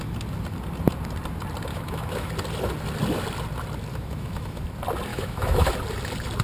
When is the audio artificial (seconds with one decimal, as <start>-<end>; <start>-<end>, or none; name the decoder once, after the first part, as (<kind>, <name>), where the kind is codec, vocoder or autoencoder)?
1.7-2.3 (autoencoder, DAC-VAE); 3.9-4.6; 5.1-5.7